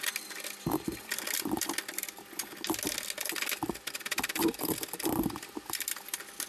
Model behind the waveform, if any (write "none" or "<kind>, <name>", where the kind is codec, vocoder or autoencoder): none